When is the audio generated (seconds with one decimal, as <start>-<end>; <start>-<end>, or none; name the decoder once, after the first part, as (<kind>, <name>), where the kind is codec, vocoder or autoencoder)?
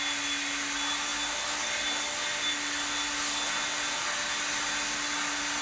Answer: none